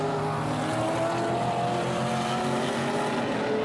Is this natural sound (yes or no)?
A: yes